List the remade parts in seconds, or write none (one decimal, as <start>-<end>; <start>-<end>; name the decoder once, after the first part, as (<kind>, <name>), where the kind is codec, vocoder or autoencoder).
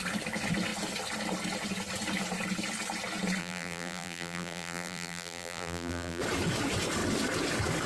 3.4-6.2 (vocoder, BigVGAN v2)